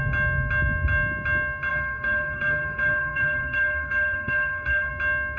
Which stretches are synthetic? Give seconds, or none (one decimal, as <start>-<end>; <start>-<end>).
1.7-4.9